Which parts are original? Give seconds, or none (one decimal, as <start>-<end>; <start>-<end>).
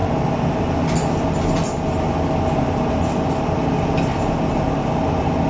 0.0-5.5